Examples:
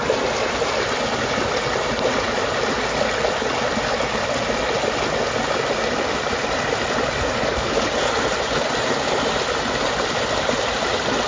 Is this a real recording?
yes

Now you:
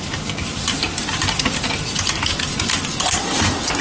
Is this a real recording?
yes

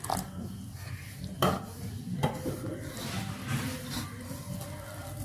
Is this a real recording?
yes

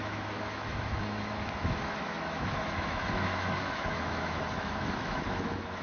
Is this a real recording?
no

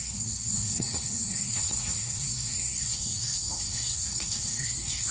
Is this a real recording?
no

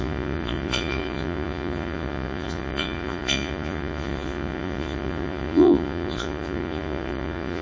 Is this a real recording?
no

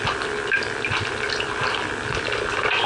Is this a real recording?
yes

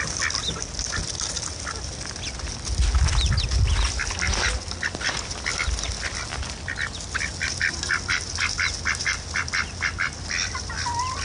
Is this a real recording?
yes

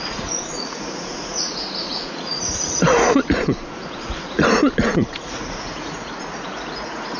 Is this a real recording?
no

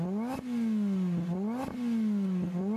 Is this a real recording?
yes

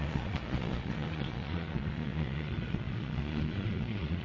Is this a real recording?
no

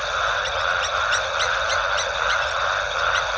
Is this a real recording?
yes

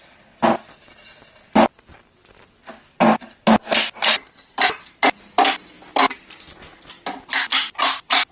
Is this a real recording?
yes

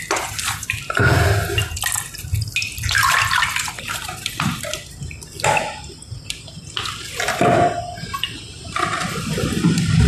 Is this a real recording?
yes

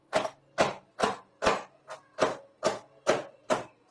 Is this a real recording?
yes